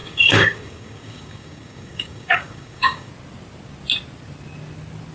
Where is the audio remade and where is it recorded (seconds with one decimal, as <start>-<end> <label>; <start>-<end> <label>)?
0.0-3.1 remade; 3.1-5.1 recorded